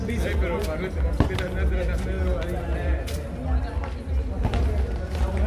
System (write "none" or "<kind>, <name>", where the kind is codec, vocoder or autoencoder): none